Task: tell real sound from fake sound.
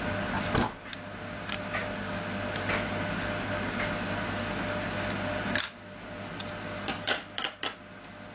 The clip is real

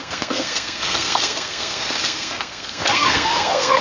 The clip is fake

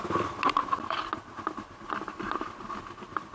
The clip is real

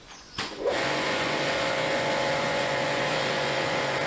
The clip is fake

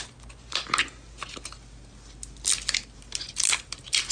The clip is real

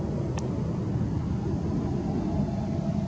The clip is real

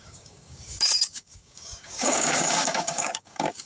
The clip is fake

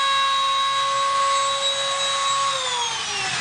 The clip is real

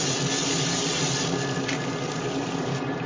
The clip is real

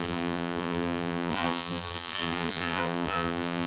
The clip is fake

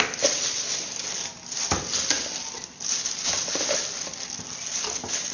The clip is real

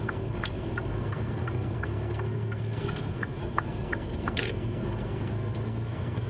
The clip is fake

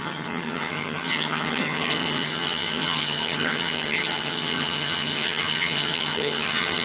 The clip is fake